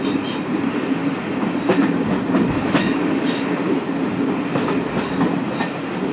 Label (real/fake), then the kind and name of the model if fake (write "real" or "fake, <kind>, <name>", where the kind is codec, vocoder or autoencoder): real